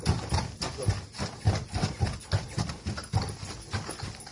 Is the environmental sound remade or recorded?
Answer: recorded